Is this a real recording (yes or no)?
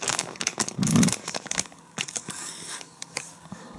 no